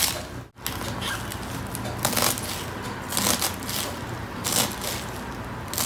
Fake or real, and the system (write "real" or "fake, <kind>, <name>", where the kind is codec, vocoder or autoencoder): real